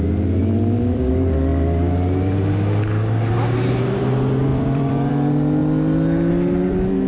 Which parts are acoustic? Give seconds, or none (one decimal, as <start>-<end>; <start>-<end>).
0.0-0.4; 1.1-4.5; 5.1-7.1